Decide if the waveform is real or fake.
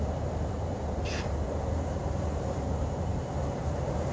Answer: fake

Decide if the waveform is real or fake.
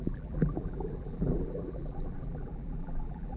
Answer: fake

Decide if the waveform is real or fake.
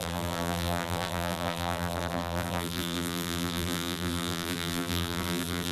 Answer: fake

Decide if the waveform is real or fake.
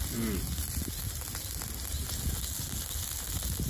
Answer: real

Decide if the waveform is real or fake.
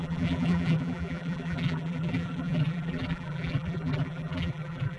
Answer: fake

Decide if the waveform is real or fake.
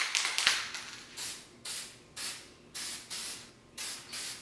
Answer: real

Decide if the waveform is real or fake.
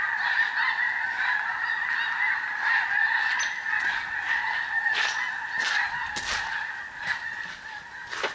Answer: real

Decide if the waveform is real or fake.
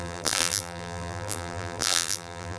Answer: fake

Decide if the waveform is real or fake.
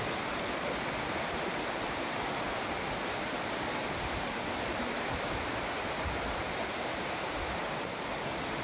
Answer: real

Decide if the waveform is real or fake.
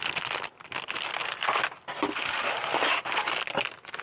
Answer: real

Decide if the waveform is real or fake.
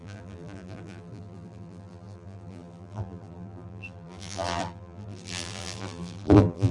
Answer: fake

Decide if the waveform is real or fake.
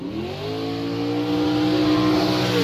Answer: real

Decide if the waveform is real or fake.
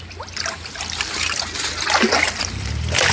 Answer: real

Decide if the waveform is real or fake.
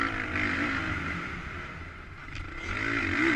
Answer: real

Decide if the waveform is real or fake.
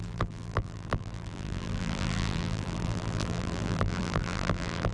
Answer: fake